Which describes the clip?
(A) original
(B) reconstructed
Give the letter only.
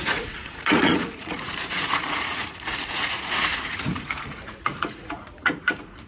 B